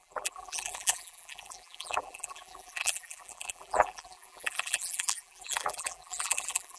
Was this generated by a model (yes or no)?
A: yes